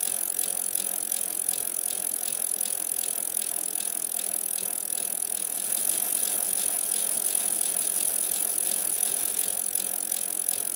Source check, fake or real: fake